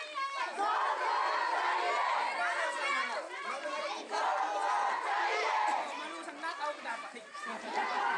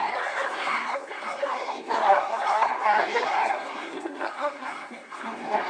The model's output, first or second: second